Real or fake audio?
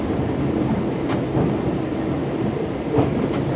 real